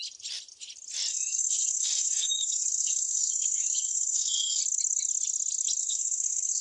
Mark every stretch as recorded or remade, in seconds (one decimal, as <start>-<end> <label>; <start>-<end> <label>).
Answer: 0.0-1.1 recorded; 1.1-4.6 remade; 4.6-5.8 recorded; 5.8-6.6 remade